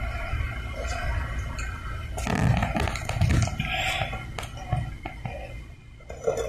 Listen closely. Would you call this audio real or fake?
real